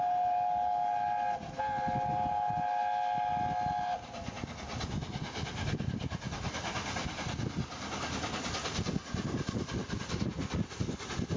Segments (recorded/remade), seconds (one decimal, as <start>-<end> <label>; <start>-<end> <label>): 0.0-11.4 recorded